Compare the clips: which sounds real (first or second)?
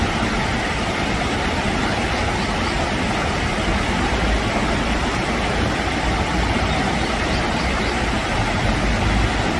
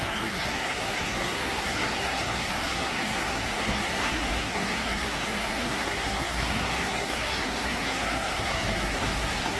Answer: first